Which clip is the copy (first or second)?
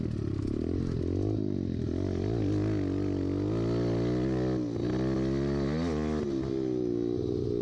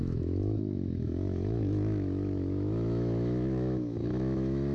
second